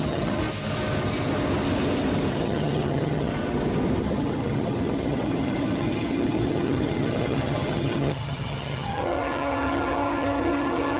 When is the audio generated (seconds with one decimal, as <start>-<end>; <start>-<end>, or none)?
0.0-0.4; 2.3-3.3; 4.0-11.0